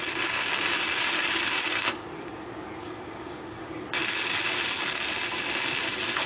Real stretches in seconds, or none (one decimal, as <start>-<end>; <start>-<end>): 0.0-2.8; 3.8-6.3